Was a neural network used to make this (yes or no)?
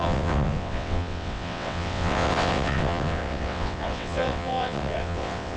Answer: yes